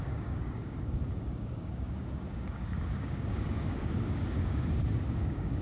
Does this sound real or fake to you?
fake